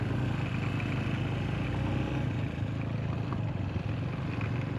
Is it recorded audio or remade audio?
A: recorded